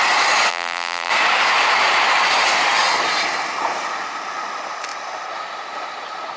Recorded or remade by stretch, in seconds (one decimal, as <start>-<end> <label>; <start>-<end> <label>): 0.0-0.5 recorded; 0.5-1.1 remade; 1.1-6.4 recorded